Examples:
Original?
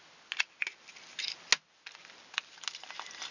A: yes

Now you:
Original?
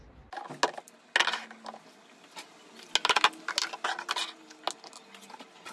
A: yes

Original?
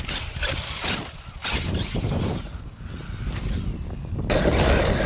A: yes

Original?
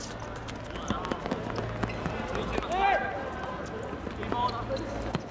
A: yes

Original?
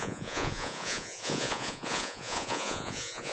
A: no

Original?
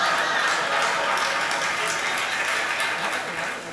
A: yes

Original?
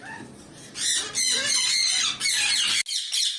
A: yes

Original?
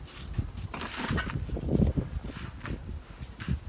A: yes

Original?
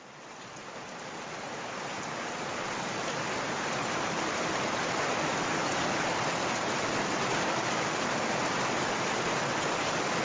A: yes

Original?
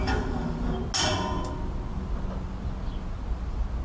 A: yes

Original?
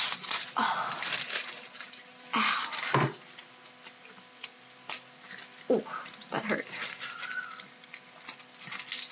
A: yes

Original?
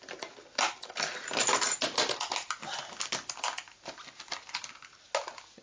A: yes